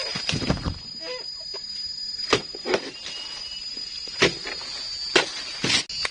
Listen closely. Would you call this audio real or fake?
real